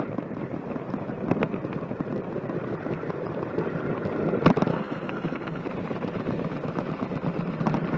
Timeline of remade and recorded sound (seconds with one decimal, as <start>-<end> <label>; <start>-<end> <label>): 0.0-4.7 recorded; 4.7-5.6 remade; 5.6-8.0 recorded